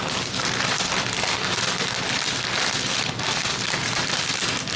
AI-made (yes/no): no